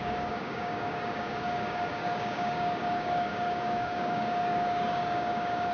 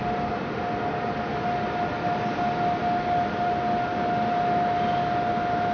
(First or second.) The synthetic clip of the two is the first